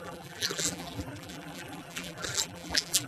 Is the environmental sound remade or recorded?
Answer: remade